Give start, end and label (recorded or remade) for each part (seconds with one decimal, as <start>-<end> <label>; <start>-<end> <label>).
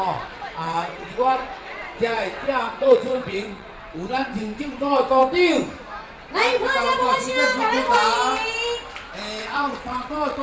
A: 0.0-5.2 remade; 5.2-9.4 recorded; 9.4-10.4 remade